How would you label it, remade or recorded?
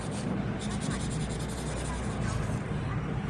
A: recorded